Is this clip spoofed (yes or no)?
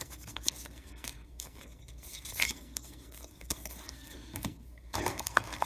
yes